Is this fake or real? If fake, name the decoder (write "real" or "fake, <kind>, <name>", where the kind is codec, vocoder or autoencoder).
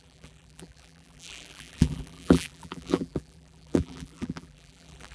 fake, vocoder, BigVGAN v2